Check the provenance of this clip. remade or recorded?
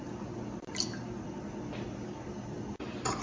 recorded